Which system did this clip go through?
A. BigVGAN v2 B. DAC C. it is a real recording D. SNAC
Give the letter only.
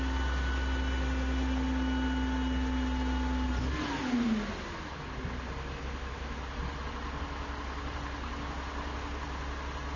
C